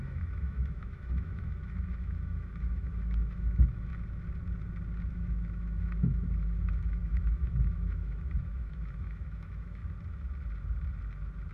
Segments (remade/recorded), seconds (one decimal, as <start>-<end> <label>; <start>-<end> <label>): 0.0-3.9 remade; 3.9-5.1 recorded; 5.1-9.8 remade; 9.8-11.5 recorded